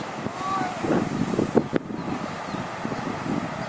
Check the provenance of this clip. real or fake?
real